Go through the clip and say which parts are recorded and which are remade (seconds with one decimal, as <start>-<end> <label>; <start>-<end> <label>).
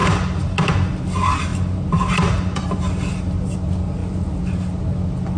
0.0-5.4 recorded